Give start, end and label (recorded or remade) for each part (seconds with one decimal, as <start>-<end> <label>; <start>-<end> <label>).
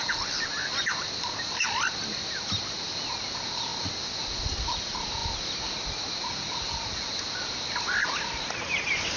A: 0.0-9.2 recorded